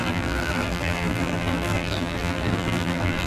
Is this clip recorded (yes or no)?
no